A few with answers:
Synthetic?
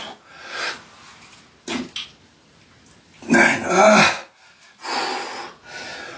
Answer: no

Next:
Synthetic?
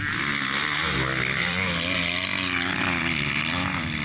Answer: no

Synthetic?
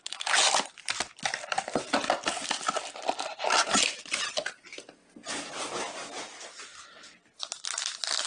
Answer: no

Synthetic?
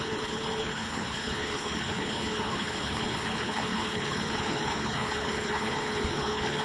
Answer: yes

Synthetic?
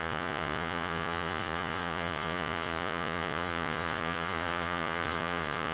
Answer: yes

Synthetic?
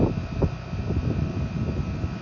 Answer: no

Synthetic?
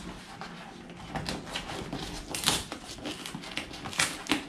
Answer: no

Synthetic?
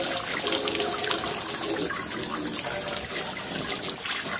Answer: no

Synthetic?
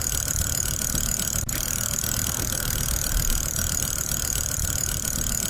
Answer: no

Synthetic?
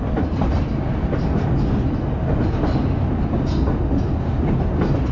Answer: no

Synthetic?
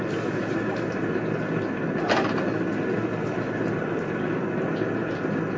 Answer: no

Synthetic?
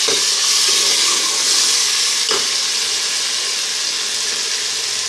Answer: no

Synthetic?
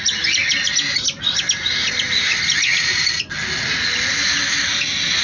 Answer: no